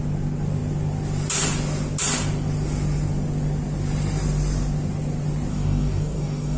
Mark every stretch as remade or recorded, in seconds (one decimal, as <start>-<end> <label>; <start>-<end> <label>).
0.0-5.5 recorded; 5.5-6.6 remade